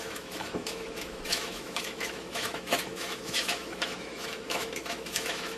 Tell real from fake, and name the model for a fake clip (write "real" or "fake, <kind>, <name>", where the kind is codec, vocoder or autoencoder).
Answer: fake, autoencoder, DAC-VAE